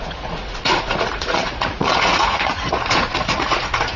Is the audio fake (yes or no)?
yes